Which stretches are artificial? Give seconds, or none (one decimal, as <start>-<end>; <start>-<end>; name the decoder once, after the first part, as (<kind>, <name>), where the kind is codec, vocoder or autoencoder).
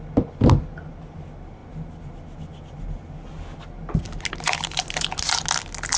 none